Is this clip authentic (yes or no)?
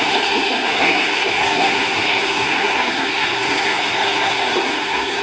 no